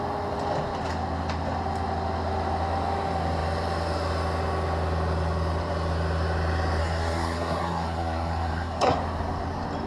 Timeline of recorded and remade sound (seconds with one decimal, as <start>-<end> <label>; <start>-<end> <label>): 0.0-6.8 recorded; 6.8-9.0 remade; 9.0-9.9 recorded